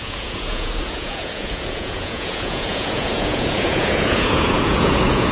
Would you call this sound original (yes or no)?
no